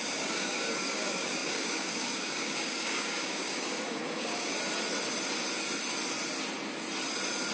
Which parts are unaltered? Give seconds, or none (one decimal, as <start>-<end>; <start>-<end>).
4.5-7.5